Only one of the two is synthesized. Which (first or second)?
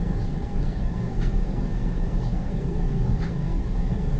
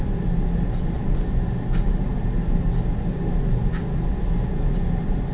first